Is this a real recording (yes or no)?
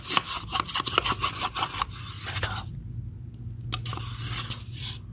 yes